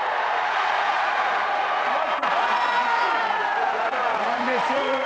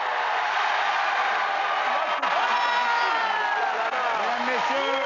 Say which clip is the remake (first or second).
first